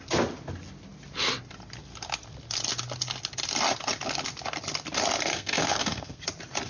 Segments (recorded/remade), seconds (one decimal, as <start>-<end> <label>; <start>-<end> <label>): 0.0-5.3 recorded; 5.3-6.2 remade; 6.2-6.7 recorded